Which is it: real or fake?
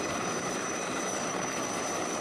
fake